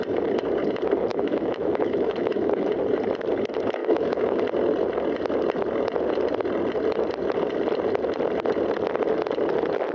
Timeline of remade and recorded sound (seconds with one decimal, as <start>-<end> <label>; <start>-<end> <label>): 0.0-1.1 recorded; 1.1-2.7 remade; 2.7-3.8 recorded; 3.8-4.4 remade; 4.4-9.9 recorded